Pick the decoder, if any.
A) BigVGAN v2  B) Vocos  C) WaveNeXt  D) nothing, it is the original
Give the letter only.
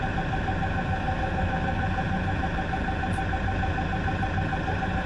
A